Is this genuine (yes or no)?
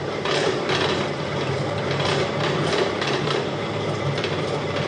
no